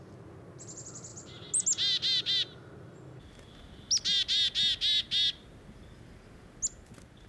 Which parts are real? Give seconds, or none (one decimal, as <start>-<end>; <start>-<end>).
0.0-7.3